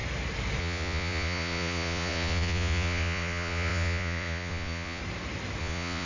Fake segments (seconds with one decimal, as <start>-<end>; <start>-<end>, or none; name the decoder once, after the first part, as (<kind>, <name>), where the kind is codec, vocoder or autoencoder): 0.6-5.0 (vocoder, Vocos); 5.6-6.0